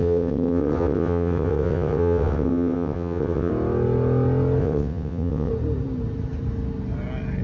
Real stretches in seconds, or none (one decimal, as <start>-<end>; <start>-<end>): 3.5-4.6; 5.5-7.4